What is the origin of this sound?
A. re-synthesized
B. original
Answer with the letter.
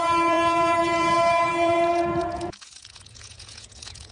A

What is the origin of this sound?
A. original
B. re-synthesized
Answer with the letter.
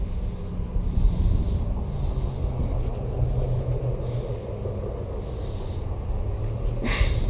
A